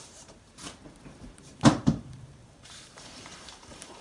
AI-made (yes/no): yes